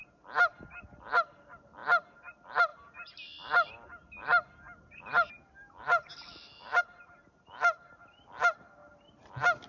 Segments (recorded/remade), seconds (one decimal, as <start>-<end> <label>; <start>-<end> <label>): 0.0-9.7 recorded

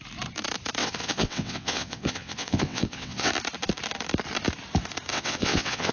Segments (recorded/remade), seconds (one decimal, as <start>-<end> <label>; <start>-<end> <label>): 0.0-0.8 recorded; 0.8-3.3 remade; 3.3-5.1 recorded; 5.1-5.9 remade

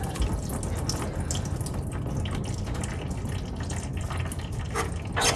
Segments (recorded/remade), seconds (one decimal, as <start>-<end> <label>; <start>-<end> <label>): 0.0-5.4 recorded

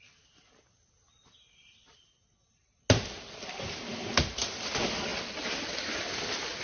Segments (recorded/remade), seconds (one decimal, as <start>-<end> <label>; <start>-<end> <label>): 0.0-6.6 recorded

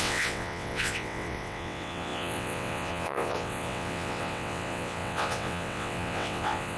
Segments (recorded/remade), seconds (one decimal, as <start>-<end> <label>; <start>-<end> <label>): 0.0-6.8 remade

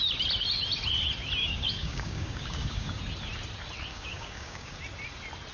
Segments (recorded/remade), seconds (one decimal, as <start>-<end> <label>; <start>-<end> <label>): 0.0-1.4 recorded; 1.4-3.0 remade; 3.0-3.9 recorded; 3.9-4.8 remade; 4.8-5.5 recorded